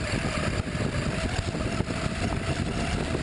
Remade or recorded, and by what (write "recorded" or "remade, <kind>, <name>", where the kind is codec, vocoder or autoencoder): recorded